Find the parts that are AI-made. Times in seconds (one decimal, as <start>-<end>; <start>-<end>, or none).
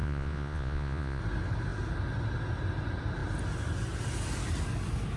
0.0-1.2